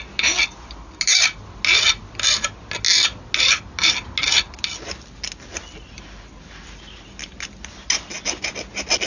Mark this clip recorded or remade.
recorded